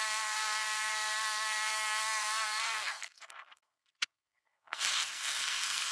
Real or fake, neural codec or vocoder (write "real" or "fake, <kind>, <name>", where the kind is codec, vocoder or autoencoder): fake, codec, SNAC